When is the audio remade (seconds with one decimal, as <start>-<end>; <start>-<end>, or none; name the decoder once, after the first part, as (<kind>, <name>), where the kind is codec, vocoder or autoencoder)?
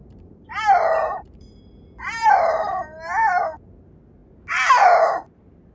0.0-3.4 (vocoder, BigVGAN v2)